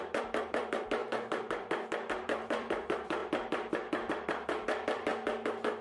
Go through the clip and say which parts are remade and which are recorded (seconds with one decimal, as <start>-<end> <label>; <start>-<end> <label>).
0.0-1.0 remade; 1.0-2.1 recorded; 2.1-5.1 remade; 5.1-5.8 recorded